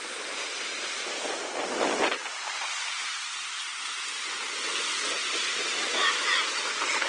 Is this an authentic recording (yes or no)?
yes